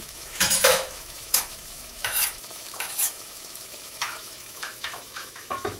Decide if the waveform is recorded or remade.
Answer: remade